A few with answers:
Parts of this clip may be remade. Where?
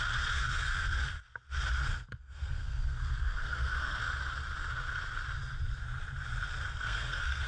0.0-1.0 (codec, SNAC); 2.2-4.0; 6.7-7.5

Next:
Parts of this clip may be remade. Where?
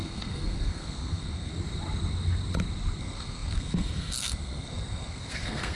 0.0-1.5 (codec, SNAC); 3.0-5.8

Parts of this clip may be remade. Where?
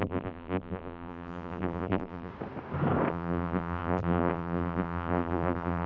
0.0-2.3 (vocoder, BigVGAN v2); 3.1-5.9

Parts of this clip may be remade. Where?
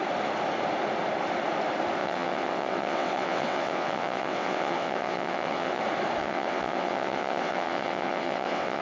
2.0-5.8 (vocoder, WaveNeXt); 6.2-8.8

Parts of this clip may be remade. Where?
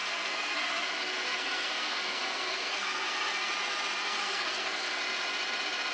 0.0-3.5 (codec, SNAC); 4.0-5.0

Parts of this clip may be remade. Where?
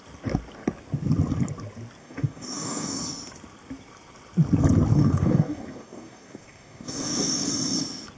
2.0-3.0 (codec, DAC); 4.9-7.5